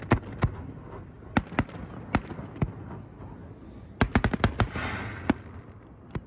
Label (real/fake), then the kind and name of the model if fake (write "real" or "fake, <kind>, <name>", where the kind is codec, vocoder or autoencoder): real